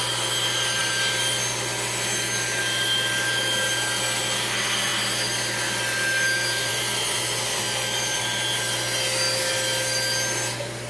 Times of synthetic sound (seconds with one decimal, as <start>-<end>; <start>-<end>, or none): none